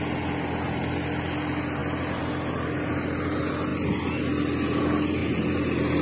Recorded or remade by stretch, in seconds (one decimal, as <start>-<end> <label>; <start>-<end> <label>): 0.0-6.0 recorded